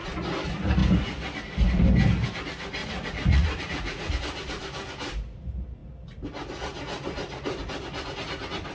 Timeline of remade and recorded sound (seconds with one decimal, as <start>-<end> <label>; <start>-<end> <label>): 0.0-2.8 recorded; 2.8-4.1 remade; 4.1-8.7 recorded